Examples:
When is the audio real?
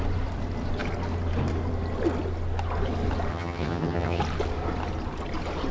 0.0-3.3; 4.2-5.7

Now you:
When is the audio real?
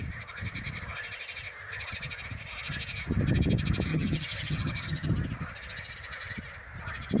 0.0-3.9; 5.1-7.2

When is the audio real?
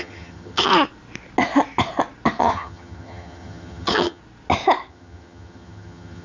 0.7-2.4; 4.2-4.9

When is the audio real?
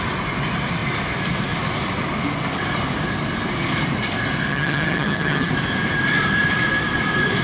0.0-4.5; 5.5-7.4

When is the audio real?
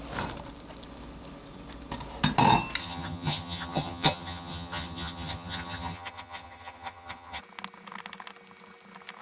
0.0-2.8; 7.4-9.2